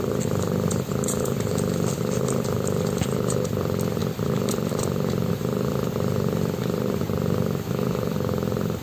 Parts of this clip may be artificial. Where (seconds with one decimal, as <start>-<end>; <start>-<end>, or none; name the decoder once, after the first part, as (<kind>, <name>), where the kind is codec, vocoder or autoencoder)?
none